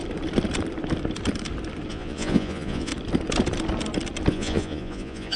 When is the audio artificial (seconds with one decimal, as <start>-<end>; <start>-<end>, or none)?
1.9-2.9; 4.3-5.4

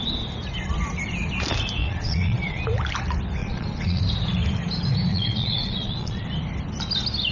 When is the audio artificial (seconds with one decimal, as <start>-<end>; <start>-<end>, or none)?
1.8-2.6; 3.4-4.0; 5.1-6.3

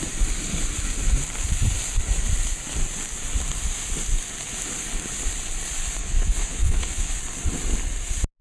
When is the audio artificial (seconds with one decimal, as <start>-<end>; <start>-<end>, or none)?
6.0-7.2

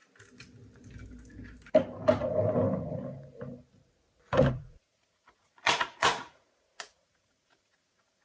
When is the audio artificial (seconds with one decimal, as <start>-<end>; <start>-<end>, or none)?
4.5-8.2

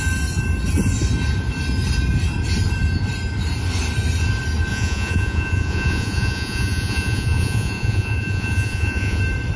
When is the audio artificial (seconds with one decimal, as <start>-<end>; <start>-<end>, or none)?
4.7-9.2